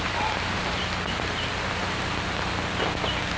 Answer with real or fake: real